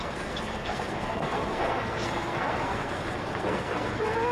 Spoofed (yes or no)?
yes